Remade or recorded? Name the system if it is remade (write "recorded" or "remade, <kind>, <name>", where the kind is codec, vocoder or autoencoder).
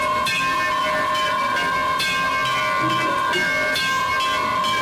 recorded